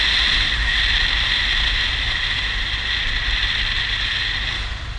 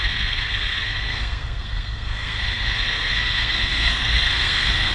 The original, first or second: first